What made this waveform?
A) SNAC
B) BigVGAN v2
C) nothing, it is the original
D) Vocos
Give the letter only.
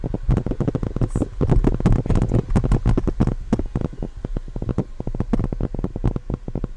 C